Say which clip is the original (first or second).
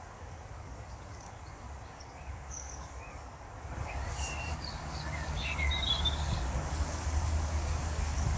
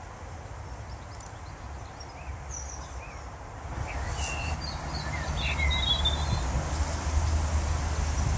second